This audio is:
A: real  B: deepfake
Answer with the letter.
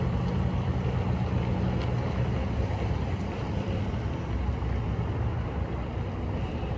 A